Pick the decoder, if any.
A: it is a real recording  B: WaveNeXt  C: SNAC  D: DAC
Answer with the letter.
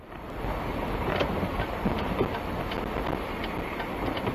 A